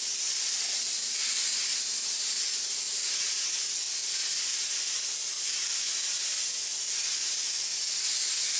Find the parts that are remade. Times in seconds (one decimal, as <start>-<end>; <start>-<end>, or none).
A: none

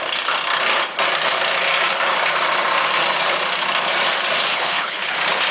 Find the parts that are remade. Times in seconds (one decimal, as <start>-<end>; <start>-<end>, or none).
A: 4.5-5.1

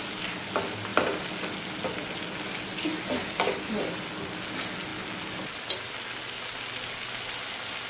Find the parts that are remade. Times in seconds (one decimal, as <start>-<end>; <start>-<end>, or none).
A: none

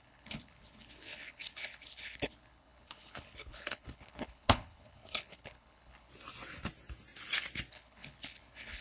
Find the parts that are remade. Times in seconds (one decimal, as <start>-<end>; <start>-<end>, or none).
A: 0.0-6.1; 7.7-8.8

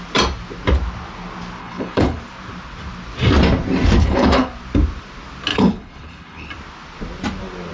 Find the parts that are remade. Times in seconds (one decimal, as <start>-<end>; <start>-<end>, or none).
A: 1.6-2.2; 4.0-4.5; 5.5-6.5

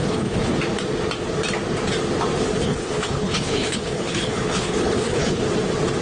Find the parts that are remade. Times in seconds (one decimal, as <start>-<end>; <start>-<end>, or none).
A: 0.0-0.5; 2.6-5.4